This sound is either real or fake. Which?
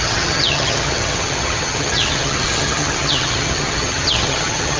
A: fake